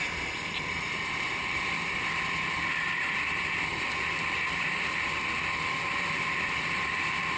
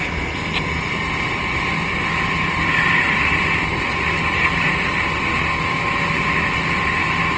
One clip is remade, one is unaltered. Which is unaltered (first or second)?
second